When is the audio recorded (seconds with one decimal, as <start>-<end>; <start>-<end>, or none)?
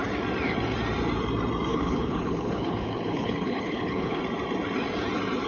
0.0-1.7; 4.2-5.5